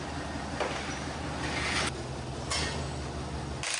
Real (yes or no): yes